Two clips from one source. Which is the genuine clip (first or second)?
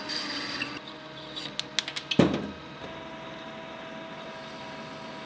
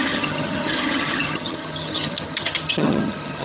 first